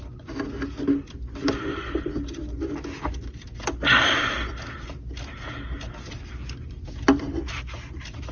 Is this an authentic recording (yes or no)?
yes